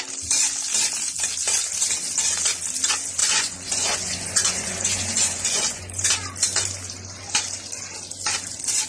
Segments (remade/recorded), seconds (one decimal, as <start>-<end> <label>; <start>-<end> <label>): 0.0-3.2 recorded; 3.2-6.1 remade; 6.1-8.9 recorded